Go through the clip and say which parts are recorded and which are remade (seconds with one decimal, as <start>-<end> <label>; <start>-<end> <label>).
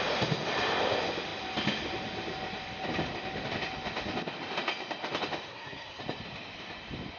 0.0-5.5 recorded; 5.5-6.0 remade; 6.0-7.2 recorded